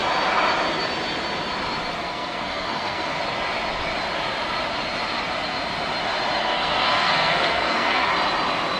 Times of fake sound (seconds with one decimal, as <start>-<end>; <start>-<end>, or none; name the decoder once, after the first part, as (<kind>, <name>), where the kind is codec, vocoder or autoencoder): 2.0-3.2 (codec, SNAC); 6.4-8.1

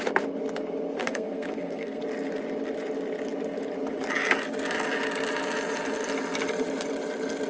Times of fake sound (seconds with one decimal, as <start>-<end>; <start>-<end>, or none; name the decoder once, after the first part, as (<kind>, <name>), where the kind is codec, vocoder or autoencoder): 1.0-2.0 (codec, SNAC)

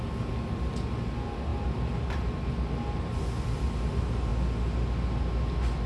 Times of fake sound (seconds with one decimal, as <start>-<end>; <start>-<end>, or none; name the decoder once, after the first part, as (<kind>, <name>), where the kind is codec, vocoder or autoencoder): none

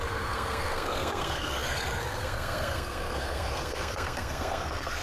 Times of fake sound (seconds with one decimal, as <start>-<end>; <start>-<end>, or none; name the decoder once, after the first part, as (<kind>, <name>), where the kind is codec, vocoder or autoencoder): 0.0-5.0 (codec, SNAC)

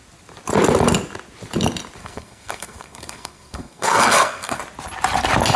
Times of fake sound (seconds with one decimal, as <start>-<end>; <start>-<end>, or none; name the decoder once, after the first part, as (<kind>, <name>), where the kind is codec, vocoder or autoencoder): 2.0-4.6 (codec, SNAC)

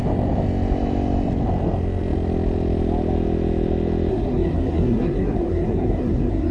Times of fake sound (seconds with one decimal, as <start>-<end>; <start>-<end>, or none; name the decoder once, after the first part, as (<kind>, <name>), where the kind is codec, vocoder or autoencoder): 4.1-6.5 (codec, SNAC)

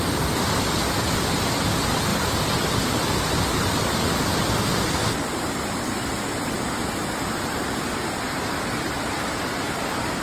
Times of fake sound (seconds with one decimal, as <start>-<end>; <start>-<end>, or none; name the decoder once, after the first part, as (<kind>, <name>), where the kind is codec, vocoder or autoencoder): none

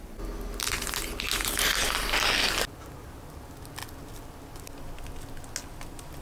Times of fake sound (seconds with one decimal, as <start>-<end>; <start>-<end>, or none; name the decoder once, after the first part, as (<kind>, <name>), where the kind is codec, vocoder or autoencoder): none